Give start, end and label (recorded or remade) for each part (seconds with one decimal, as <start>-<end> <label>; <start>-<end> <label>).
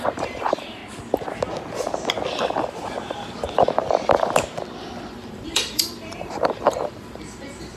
0.0-0.8 remade; 0.8-5.1 recorded; 5.1-7.8 remade